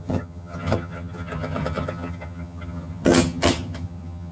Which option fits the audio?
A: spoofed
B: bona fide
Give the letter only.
A